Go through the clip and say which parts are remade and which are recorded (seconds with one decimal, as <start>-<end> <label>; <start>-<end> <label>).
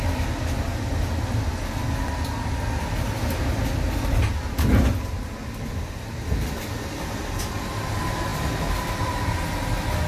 0.0-10.1 recorded